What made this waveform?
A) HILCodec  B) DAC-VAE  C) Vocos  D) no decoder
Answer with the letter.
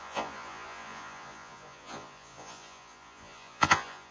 C